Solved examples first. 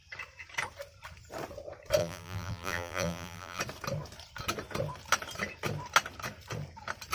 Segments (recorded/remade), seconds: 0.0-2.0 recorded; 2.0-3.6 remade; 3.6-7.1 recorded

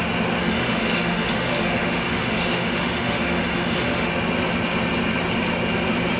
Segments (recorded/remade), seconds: 0.0-0.4 recorded; 0.4-4.1 remade; 4.1-6.2 recorded

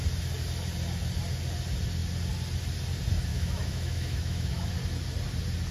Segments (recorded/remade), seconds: 0.0-3.3 recorded; 3.3-4.7 remade; 4.7-5.7 recorded

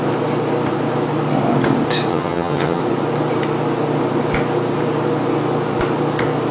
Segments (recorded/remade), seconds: 0.0-2.1 recorded; 2.1-2.8 remade; 2.8-6.5 recorded

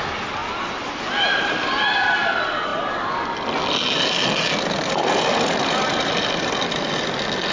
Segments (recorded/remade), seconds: 0.0-7.5 recorded